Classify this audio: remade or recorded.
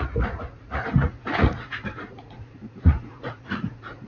remade